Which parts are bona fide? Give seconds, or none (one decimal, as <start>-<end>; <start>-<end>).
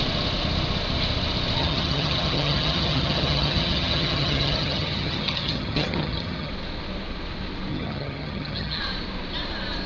0.0-1.6; 6.5-7.7; 8.8-9.9